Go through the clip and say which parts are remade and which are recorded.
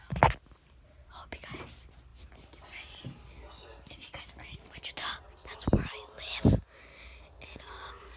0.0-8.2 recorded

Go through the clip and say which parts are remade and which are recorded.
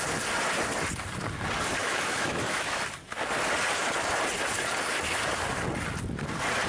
0.0-1.8 recorded; 1.8-2.8 remade; 2.8-6.7 recorded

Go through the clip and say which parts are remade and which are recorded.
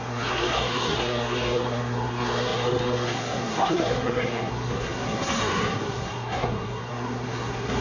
0.0-7.8 remade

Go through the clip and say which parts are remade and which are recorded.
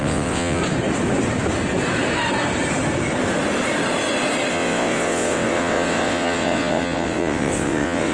0.0-0.6 remade; 0.6-4.5 recorded; 4.5-8.1 remade